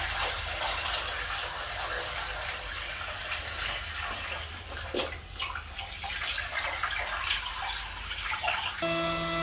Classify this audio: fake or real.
real